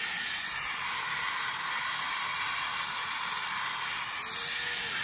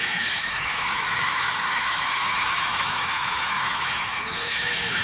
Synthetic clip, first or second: second